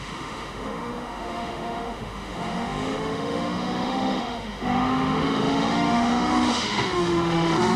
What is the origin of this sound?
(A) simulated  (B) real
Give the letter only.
A